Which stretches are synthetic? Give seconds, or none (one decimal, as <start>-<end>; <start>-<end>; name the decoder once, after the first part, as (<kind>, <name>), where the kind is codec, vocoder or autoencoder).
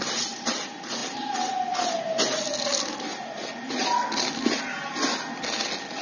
none